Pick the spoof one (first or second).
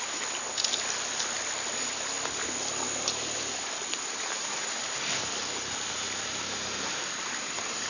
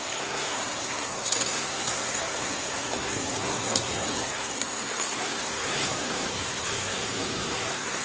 second